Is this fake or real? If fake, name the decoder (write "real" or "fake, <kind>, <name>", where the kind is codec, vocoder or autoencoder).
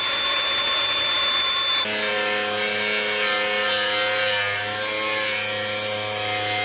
real